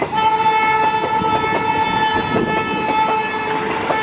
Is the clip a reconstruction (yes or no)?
no